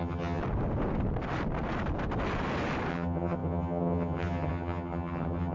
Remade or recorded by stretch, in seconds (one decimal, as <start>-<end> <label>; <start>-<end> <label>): 0.0-0.4 remade; 0.4-2.9 recorded; 2.9-5.5 remade

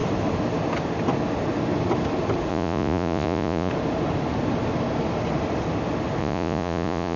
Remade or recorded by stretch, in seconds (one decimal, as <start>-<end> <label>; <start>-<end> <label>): 0.0-2.5 recorded; 2.5-3.7 remade; 3.7-6.2 recorded; 6.2-7.2 remade